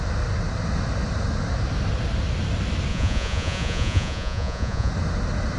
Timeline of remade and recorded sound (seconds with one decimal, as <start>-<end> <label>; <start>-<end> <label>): 0.0-2.9 recorded; 2.9-4.9 remade; 4.9-5.6 recorded